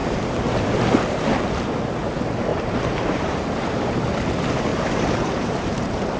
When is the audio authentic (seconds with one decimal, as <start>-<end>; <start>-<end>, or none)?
0.7-2.5; 3.9-4.7